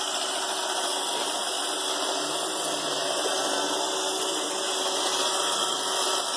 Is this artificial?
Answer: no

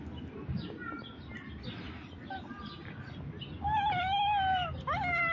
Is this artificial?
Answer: no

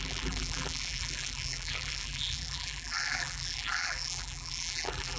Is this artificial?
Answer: yes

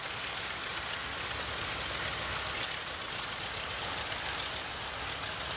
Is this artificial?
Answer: no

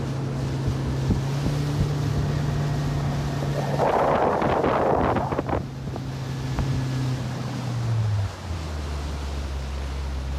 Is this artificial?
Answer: no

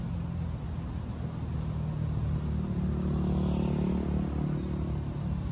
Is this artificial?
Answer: no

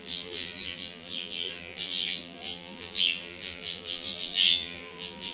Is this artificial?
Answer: yes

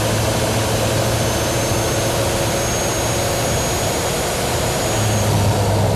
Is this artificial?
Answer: no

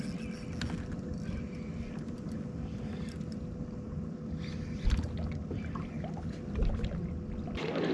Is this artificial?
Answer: no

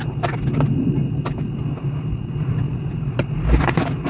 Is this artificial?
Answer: no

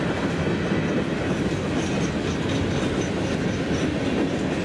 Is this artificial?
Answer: no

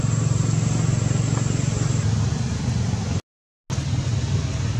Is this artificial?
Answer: no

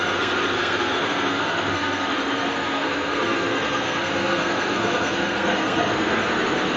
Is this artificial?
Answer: yes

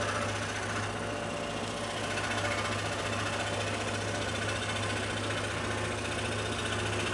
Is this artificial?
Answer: no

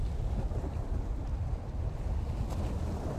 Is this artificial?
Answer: no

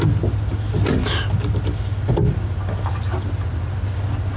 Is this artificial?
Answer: no